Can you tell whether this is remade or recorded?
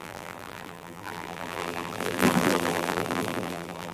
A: remade